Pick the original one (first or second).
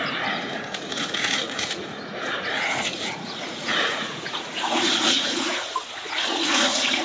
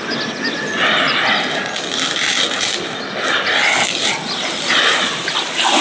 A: second